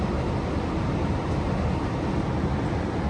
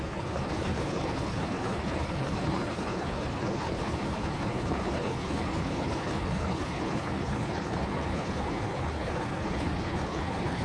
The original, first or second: first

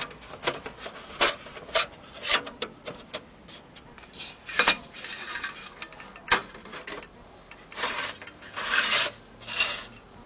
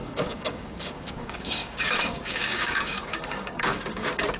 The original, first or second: first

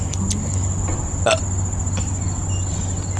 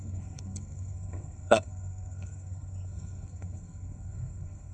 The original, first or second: first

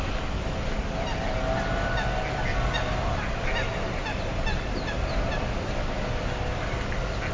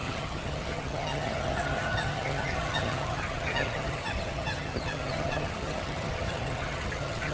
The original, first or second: first